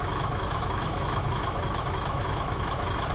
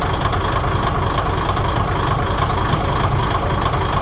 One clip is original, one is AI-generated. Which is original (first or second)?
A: second